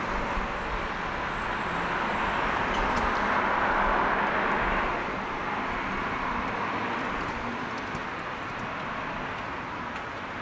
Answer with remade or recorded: recorded